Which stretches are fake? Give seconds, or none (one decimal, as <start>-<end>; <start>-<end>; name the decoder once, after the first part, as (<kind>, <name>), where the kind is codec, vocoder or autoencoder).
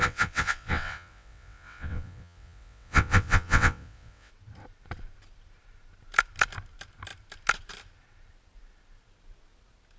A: 0.0-4.3 (vocoder, WaveNeXt)